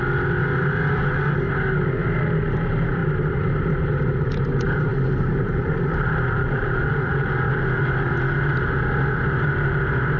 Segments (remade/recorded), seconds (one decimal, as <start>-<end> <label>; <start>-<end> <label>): 0.0-3.0 recorded; 3.0-3.7 remade; 3.7-4.9 recorded; 4.9-7.1 remade; 7.1-10.2 recorded